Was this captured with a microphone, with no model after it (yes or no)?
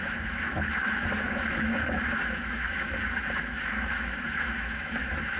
no